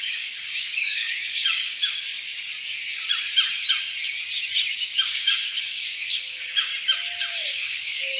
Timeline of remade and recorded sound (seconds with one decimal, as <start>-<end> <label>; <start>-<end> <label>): 0.0-2.3 remade; 2.3-4.8 recorded; 4.8-6.7 remade; 6.7-7.4 recorded; 7.4-8.2 remade